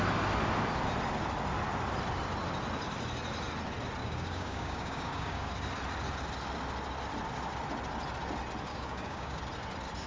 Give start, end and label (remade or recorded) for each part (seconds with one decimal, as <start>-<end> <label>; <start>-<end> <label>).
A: 0.0-4.0 recorded; 4.0-5.5 remade; 5.5-8.7 recorded; 8.7-9.4 remade; 9.4-10.1 recorded